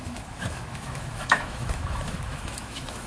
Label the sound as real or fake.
fake